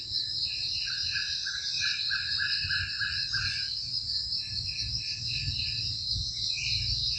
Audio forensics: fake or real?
real